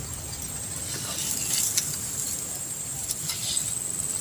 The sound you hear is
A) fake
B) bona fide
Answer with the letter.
B